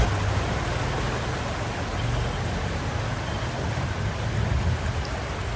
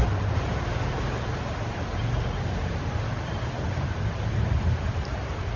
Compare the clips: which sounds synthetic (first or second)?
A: second